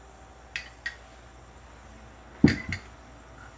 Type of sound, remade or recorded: recorded